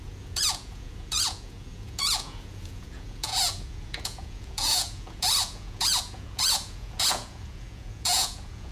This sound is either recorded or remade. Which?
remade